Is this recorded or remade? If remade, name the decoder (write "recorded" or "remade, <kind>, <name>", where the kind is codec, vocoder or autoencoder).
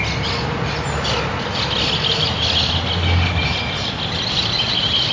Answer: recorded